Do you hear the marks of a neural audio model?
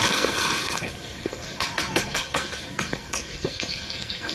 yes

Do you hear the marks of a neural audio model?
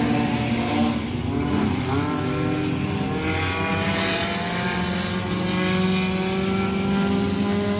no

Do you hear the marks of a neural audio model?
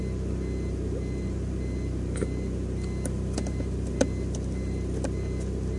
no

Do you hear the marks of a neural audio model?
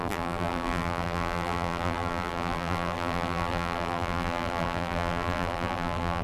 yes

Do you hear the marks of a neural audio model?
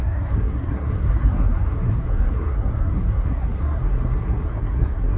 yes